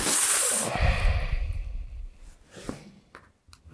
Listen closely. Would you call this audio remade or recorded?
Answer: recorded